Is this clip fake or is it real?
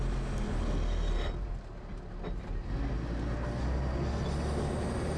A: real